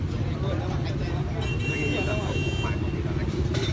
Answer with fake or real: real